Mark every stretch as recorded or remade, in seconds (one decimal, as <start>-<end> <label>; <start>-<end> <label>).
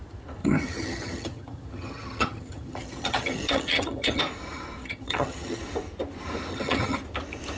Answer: 0.0-0.4 recorded; 0.4-4.2 remade; 4.2-4.8 recorded; 4.8-5.6 remade; 5.6-6.5 recorded; 6.5-7.0 remade; 7.0-7.6 recorded